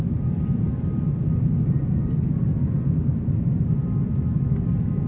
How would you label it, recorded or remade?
recorded